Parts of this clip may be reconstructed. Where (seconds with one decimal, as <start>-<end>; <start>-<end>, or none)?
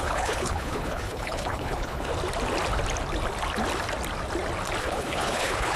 0.0-2.1; 4.8-5.8